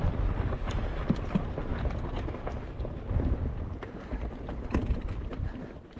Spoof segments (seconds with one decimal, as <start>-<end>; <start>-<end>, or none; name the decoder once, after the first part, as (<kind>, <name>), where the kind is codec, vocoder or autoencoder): 0.6-1.2 (vocoder, BigVGAN v2)